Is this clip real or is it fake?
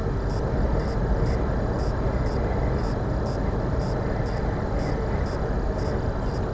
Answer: real